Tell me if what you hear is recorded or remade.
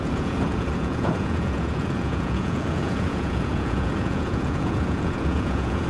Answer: remade